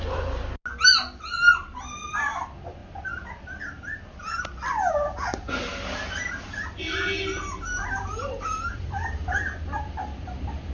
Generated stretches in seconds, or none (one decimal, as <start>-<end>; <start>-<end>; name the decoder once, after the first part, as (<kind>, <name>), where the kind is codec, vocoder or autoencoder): 7.8-10.7 (vocoder, BigVGAN v2)